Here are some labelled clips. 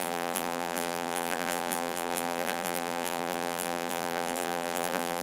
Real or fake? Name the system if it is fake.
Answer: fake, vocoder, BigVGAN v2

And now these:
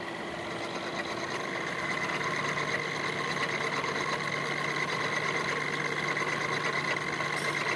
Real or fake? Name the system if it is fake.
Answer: real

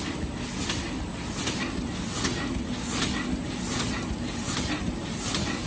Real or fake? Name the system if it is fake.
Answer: real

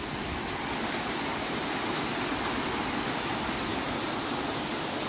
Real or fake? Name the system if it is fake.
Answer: real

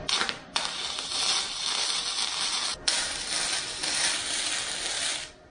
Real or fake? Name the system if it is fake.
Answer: real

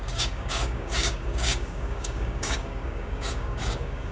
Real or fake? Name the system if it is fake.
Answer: fake, codec, DAC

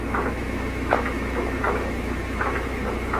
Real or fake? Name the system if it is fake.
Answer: fake, autoencoder, DAC-VAE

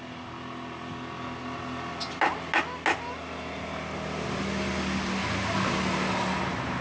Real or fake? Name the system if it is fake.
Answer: real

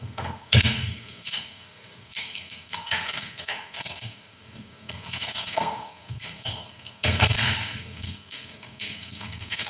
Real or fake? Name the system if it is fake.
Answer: fake, codec, SNAC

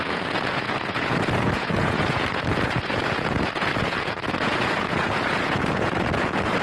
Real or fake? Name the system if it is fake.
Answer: fake, vocoder, Vocos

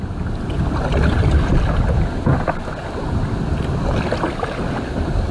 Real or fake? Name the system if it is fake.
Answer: real